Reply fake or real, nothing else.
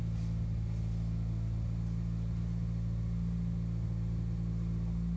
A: real